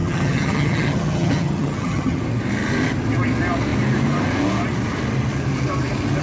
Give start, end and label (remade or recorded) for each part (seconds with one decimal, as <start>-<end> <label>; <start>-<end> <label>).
0.0-2.2 remade; 2.2-6.2 recorded